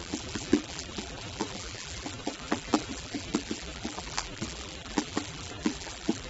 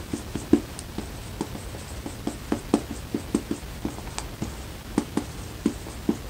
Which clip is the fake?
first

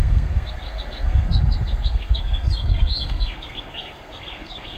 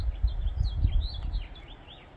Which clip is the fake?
first